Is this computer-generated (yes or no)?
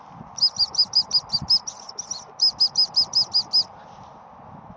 no